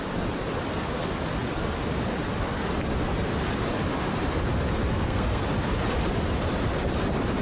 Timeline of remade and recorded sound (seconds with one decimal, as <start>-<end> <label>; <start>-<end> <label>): 0.0-4.9 recorded; 4.9-5.4 remade; 5.4-7.4 recorded